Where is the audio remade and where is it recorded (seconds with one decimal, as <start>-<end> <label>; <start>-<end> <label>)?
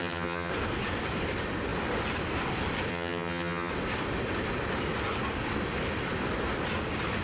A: 0.0-0.5 remade; 0.5-2.9 recorded; 2.9-3.7 remade; 3.7-7.2 recorded